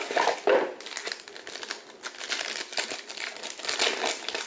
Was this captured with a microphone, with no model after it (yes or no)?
yes